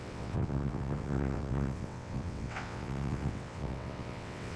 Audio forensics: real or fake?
fake